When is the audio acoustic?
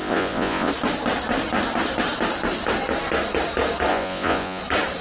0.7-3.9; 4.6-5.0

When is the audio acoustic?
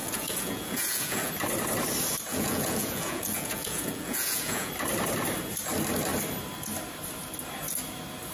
1.3-2.3; 4.7-8.3